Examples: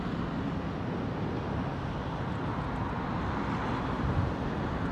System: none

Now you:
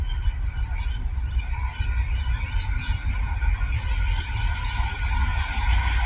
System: none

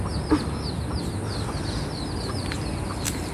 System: none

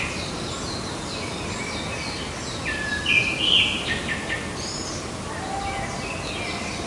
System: none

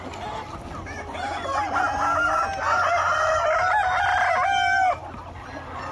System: none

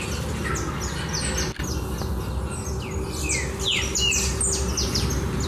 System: none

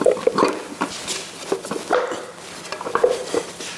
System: none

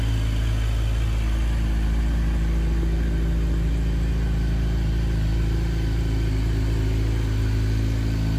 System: none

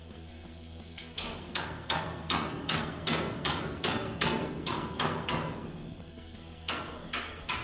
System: codec, SNAC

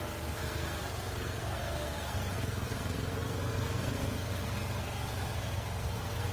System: codec, SNAC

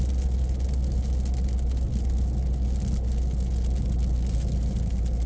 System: none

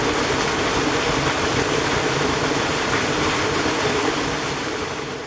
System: none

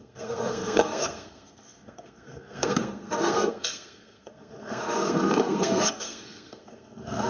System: codec, SNAC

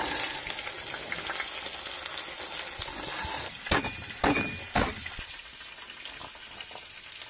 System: none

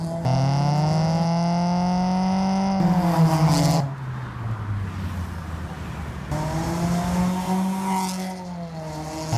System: none